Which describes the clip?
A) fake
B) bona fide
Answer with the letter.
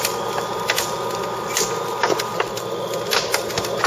B